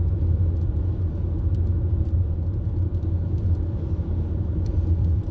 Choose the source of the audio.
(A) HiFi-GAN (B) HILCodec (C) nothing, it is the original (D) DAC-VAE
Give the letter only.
C